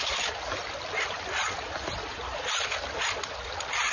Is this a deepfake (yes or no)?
no